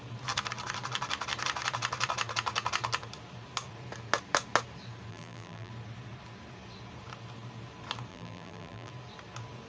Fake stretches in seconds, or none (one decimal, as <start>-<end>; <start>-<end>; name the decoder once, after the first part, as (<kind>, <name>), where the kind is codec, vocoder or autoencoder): 5.1-5.7 (vocoder, BigVGAN v2); 8.1-8.9